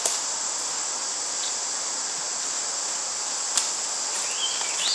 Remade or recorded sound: recorded